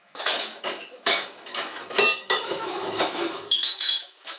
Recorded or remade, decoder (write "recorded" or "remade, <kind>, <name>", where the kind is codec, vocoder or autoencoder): remade, autoencoder, DAC-VAE